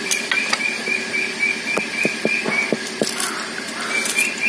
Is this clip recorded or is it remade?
recorded